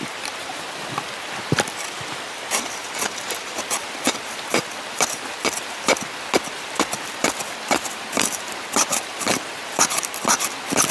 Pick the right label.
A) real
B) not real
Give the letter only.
B